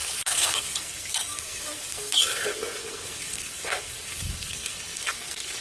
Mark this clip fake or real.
fake